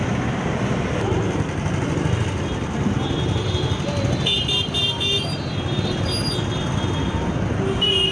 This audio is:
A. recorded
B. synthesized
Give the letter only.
A